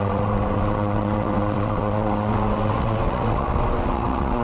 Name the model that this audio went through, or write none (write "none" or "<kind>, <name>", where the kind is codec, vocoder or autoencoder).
vocoder, WaveNeXt